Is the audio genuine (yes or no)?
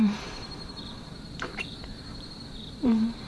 no